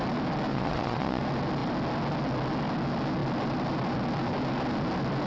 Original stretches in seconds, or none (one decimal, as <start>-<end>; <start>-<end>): 0.0-0.5; 1.2-5.3